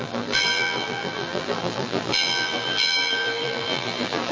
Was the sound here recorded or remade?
remade